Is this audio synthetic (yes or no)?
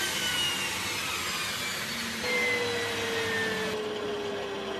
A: no